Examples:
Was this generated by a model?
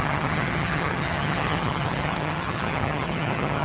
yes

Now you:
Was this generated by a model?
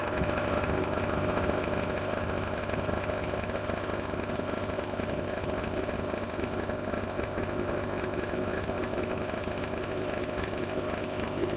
yes